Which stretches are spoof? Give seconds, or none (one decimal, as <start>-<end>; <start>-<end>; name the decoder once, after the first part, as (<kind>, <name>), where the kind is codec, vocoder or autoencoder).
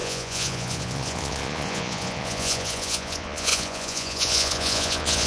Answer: 0.0-5.3 (vocoder, Vocos)